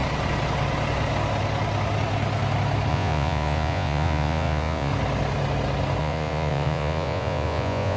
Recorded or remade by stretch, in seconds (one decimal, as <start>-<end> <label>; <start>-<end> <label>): 0.0-2.9 recorded; 2.9-4.9 remade; 4.9-6.0 recorded; 6.0-8.0 remade